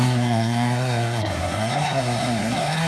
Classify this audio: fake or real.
fake